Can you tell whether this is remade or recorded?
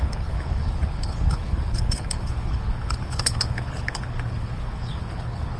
remade